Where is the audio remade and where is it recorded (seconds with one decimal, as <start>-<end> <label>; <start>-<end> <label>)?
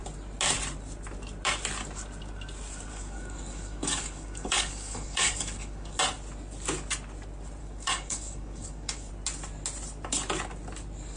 0.0-2.9 recorded; 2.9-6.0 remade; 6.0-7.6 recorded; 7.6-9.1 remade; 9.1-11.2 recorded